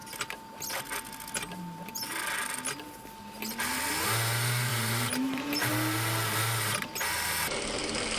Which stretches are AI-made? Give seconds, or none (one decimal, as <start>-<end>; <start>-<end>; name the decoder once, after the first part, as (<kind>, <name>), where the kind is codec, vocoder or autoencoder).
4.7-5.7 (vocoder, BigVGAN v2)